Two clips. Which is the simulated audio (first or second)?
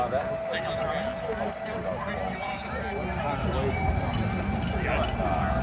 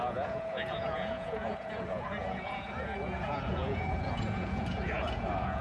second